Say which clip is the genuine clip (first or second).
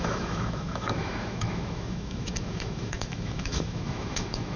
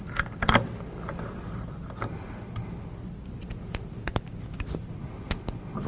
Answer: second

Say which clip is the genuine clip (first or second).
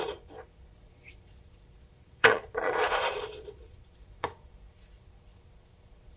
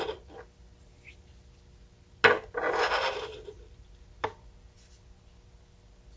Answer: second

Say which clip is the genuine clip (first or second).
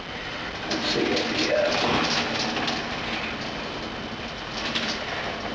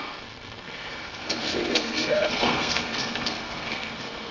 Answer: first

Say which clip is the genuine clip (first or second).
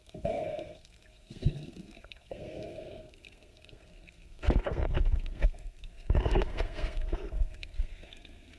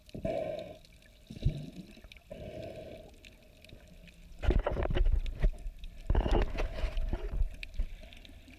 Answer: second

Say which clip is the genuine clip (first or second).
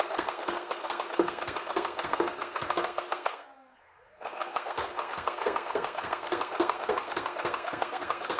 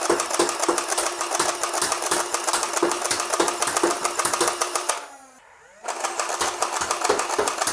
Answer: second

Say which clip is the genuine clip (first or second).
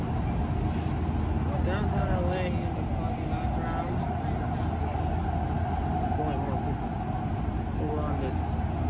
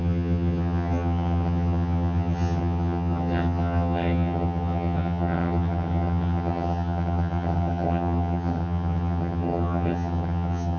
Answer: first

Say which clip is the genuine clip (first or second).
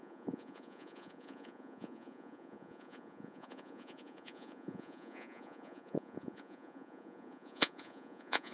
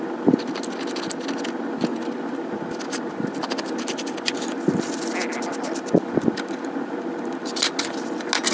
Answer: second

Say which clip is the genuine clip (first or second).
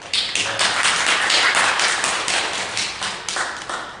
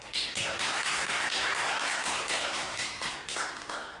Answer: first